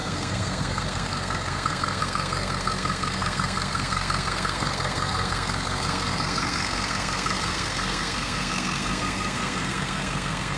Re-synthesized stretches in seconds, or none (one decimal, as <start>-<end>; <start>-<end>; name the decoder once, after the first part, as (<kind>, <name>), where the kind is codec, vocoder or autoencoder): 0.0-10.6 (codec, SNAC)